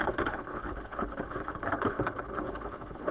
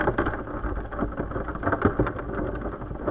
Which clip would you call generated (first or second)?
first